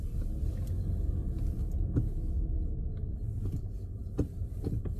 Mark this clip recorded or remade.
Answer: recorded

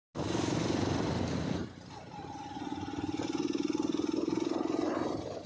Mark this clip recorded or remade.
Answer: recorded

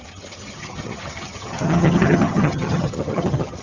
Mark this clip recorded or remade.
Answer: remade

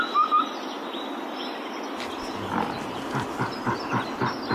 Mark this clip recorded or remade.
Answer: recorded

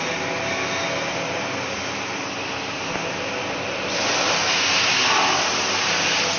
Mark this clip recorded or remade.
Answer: recorded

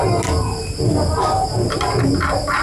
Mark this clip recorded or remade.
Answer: recorded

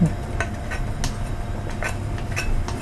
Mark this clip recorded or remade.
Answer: recorded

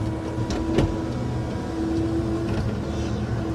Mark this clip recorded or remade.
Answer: recorded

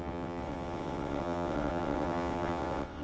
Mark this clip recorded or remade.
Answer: remade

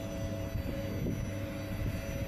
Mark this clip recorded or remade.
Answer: recorded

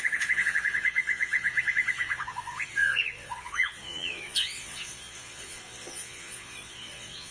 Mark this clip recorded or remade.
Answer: remade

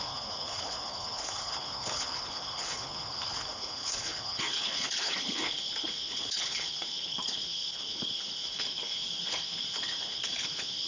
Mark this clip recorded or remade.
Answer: remade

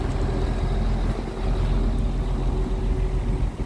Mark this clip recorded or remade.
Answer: recorded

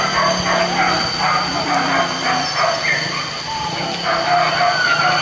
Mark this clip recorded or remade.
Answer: recorded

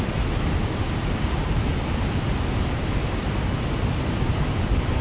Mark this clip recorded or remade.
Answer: recorded